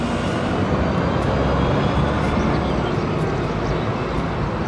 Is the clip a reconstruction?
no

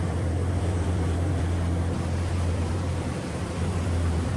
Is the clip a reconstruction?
yes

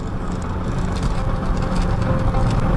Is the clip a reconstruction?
no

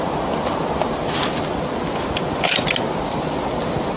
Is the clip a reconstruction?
no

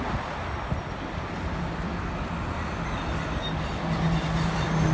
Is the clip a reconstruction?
no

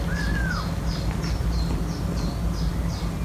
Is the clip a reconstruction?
no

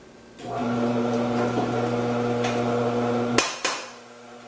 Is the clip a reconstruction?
no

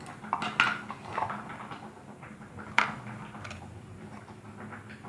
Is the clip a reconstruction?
no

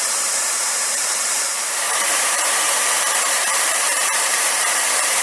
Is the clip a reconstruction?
yes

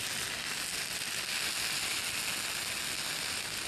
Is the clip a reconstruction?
no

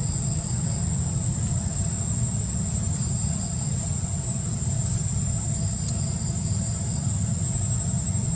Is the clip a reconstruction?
no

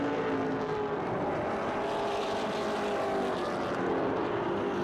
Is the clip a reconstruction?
no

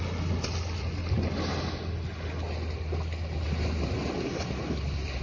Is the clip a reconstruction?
no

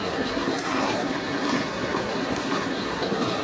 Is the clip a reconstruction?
yes